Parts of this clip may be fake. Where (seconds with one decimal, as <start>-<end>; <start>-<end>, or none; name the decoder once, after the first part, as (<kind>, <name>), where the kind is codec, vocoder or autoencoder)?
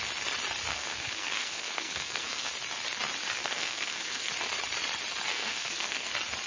0.7-2.5 (codec, SNAC); 3.4-4.3; 5.3-6.1